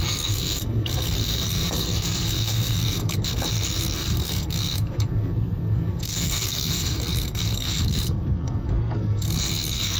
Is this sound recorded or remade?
remade